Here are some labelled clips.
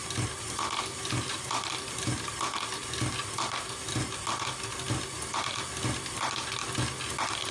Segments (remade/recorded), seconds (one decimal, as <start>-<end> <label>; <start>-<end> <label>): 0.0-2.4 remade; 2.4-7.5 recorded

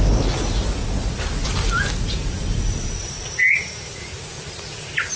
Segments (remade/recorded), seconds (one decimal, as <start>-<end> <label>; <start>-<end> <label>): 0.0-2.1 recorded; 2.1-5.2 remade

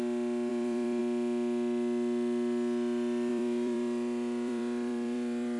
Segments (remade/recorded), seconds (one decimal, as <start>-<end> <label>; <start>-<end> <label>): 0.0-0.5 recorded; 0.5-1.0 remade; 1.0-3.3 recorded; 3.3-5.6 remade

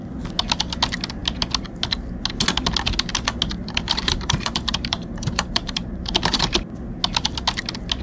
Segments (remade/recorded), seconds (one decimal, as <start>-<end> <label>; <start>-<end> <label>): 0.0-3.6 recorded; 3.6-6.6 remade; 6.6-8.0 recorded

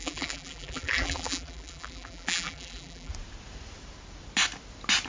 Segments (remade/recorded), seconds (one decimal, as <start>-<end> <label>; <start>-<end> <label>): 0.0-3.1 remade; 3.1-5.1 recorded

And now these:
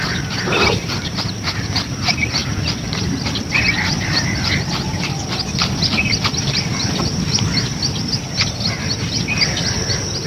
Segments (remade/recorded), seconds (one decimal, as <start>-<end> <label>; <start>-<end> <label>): 0.0-2.4 recorded; 2.4-6.0 remade; 6.0-10.3 recorded

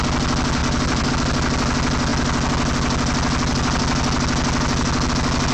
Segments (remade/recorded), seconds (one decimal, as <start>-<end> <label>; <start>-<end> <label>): 0.0-0.6 recorded; 0.6-1.1 remade; 1.1-5.5 recorded